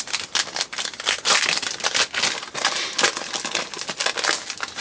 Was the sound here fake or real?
real